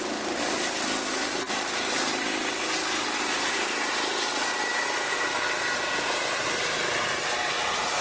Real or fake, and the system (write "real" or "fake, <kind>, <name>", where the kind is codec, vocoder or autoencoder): real